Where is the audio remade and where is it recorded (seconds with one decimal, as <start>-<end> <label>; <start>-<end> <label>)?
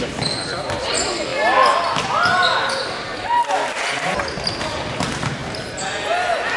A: 0.0-1.3 remade; 1.3-4.6 recorded; 4.6-5.4 remade; 5.4-6.6 recorded